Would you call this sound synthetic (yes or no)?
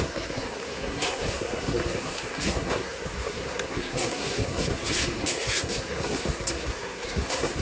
yes